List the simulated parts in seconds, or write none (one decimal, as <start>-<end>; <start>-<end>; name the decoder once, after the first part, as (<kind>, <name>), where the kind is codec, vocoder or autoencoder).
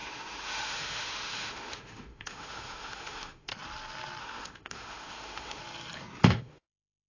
0.0-3.5 (autoencoder, DAC-VAE); 4.2-5.6; 6.2-7.1